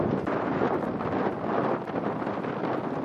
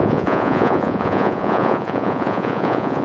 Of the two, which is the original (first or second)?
first